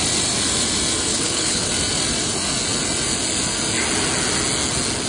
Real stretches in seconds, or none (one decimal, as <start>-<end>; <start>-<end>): 0.0-1.1; 1.7-5.1